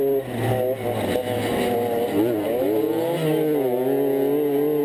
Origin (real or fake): real